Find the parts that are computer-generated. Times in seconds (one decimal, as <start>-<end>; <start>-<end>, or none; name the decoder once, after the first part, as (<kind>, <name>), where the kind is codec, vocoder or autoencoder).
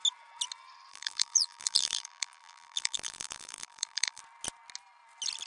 0.9-4.2 (vocoder, BigVGAN v2)